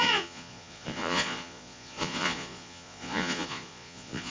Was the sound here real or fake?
fake